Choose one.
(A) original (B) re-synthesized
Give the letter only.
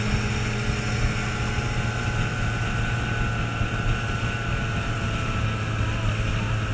A